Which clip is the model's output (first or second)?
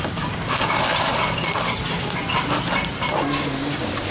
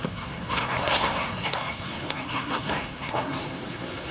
second